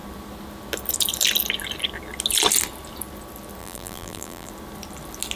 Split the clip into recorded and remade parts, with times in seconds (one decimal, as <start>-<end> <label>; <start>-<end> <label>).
0.0-3.6 recorded; 3.6-4.5 remade; 4.5-5.4 recorded